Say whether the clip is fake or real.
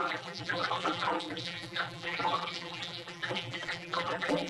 fake